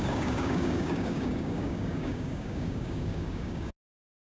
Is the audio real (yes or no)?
no